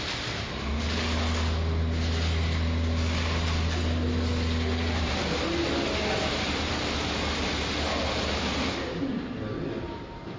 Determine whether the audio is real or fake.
real